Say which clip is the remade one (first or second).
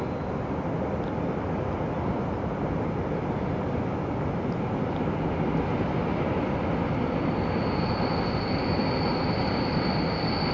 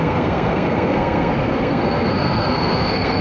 second